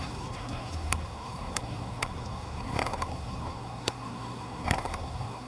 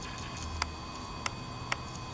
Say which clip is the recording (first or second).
second